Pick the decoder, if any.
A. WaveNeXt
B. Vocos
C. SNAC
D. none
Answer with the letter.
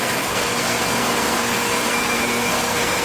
C